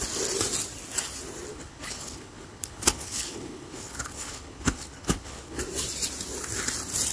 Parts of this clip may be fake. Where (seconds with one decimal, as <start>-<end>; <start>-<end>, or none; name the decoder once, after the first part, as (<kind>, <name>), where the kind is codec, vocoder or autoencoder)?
1.5-5.6 (codec, HILCodec)